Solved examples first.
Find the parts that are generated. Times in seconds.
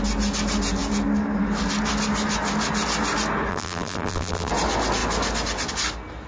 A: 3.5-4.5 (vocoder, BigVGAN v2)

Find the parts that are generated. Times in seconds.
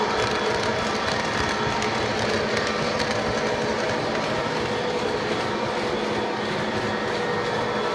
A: none